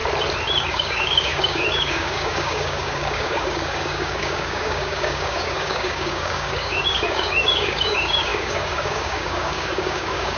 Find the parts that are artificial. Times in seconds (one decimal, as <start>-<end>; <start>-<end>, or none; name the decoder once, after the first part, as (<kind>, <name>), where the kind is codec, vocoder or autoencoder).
0.7-10.4 (codec, DAC)